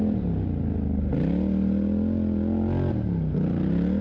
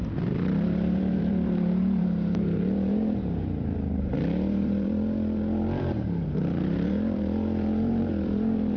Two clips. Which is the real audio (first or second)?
first